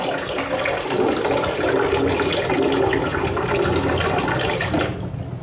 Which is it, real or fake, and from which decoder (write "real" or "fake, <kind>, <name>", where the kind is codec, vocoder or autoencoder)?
real